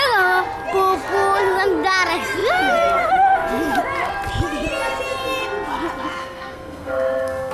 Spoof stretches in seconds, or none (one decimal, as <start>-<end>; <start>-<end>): 6.2-7.5